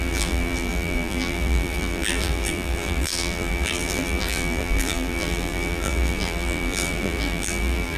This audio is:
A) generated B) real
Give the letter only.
A